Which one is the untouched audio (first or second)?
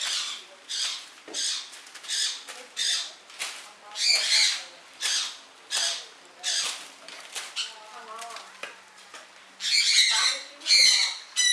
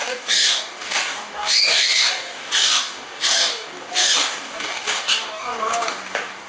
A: first